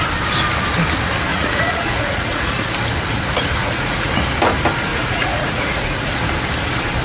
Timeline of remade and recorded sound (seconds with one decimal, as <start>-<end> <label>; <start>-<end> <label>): 0.0-1.3 recorded; 1.3-2.6 remade; 2.6-3.5 recorded; 3.5-4.1 remade; 4.1-4.9 recorded; 4.9-6.2 remade; 6.2-7.0 recorded